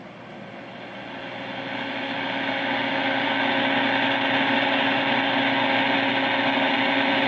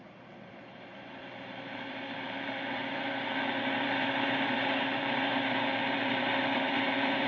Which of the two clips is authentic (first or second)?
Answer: first